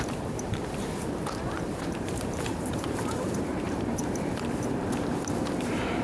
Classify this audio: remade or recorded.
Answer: remade